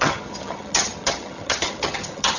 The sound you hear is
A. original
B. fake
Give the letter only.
B